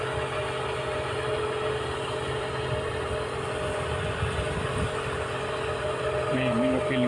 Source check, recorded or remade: recorded